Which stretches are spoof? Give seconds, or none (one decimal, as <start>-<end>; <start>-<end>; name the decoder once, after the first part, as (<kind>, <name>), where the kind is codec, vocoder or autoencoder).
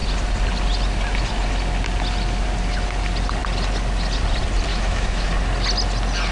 4.7-5.3 (autoencoder, DAC-VAE)